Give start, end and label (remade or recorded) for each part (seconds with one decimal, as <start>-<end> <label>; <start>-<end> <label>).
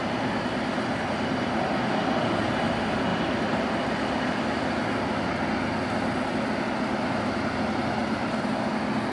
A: 0.0-8.0 recorded; 8.0-8.7 remade; 8.7-9.1 recorded